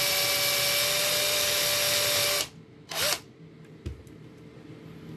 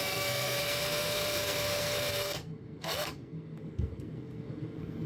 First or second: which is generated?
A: second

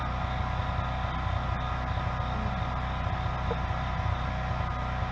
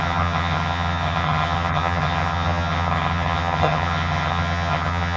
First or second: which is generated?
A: second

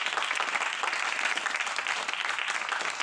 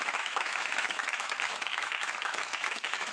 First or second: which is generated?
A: second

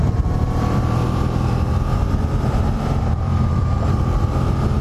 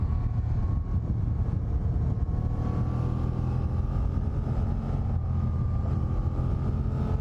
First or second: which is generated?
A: first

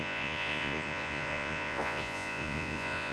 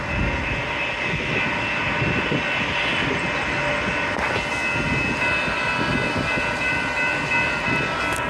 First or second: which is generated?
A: first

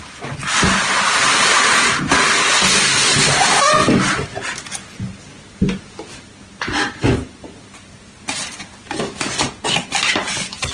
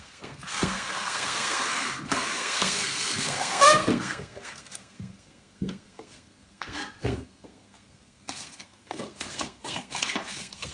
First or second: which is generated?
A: second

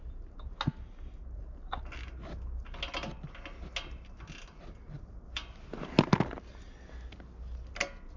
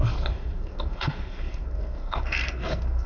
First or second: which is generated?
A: second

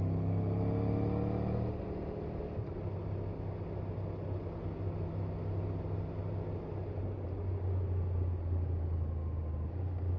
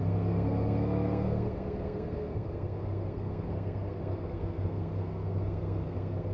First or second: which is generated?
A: second